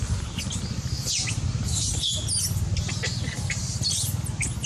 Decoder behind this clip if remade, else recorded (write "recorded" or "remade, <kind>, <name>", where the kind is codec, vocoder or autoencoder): recorded